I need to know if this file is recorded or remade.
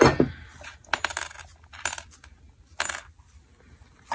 recorded